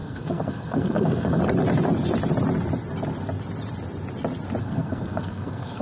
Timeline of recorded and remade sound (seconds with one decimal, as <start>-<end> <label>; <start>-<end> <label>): 0.0-1.4 remade; 1.4-4.6 recorded; 4.6-5.8 remade

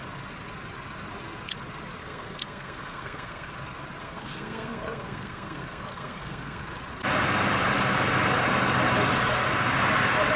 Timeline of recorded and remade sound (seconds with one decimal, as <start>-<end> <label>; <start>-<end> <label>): 0.0-2.0 recorded; 2.0-3.5 remade; 3.5-4.0 recorded; 4.0-6.6 remade; 6.6-10.4 recorded